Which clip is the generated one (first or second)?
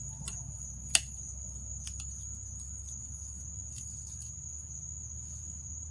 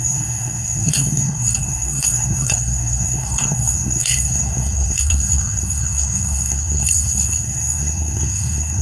second